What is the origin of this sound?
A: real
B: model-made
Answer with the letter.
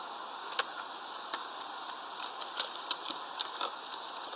A